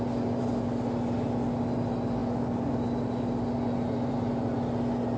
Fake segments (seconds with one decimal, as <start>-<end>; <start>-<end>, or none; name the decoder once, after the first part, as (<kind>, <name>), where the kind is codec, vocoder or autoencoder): none